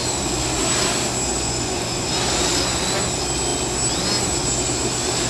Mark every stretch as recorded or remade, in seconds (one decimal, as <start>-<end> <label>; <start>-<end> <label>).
0.0-1.3 recorded; 1.3-2.1 remade; 2.1-5.3 recorded